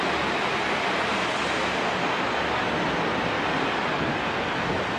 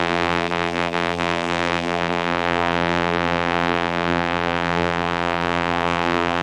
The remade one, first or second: second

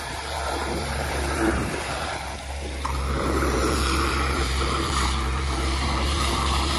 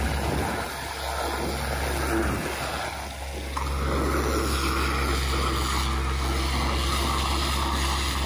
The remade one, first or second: first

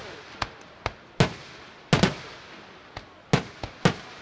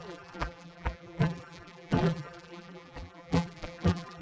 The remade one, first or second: second